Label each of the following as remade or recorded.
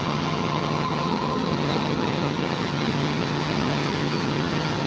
remade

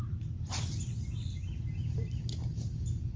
recorded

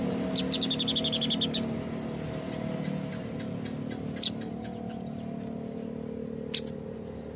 recorded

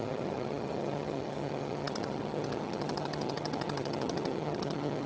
remade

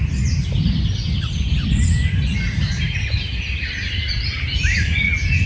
recorded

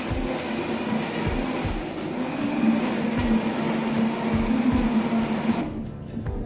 recorded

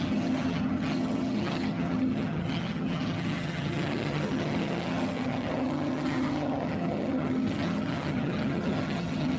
remade